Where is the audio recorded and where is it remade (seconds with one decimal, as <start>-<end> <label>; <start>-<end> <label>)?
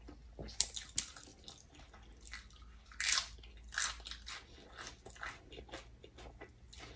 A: 0.0-7.0 recorded